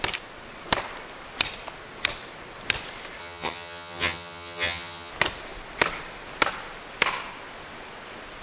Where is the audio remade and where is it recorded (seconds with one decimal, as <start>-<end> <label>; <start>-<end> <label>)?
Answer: 0.0-3.2 recorded; 3.2-5.1 remade; 5.1-8.4 recorded